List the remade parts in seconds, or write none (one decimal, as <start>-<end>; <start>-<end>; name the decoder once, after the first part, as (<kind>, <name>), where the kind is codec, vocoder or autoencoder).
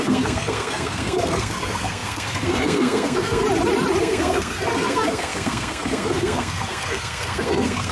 0.0-3.4 (codec, SNAC); 4.0-7.9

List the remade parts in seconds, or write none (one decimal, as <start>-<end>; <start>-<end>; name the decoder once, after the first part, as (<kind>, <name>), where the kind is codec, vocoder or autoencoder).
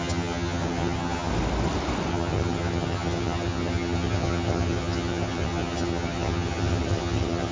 0.0-1.3 (vocoder, HiFi-GAN); 2.1-7.5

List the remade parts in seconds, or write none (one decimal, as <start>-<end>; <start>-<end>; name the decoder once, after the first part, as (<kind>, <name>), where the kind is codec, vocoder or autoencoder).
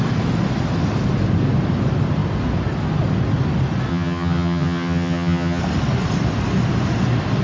3.9-5.6 (vocoder, HiFi-GAN)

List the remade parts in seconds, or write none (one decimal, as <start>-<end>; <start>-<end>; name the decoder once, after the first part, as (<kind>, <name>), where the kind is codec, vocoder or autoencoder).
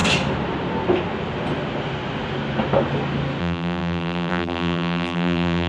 3.4-5.7 (vocoder, BigVGAN v2)